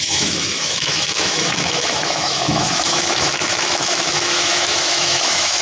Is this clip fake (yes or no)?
yes